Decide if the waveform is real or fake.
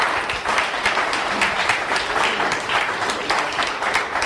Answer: fake